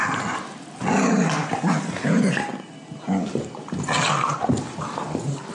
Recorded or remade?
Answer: recorded